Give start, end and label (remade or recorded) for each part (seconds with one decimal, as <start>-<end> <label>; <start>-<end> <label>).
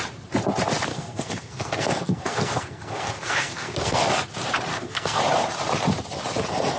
0.0-0.9 recorded; 0.9-4.1 remade; 4.1-4.7 recorded; 4.7-5.2 remade; 5.2-6.8 recorded